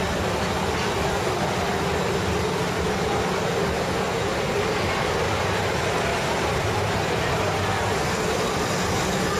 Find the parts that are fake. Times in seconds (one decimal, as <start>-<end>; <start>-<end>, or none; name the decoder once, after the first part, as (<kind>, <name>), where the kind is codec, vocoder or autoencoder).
6.1-7.3 (vocoder, BigVGAN v2)